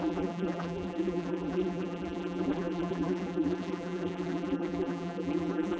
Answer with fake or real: fake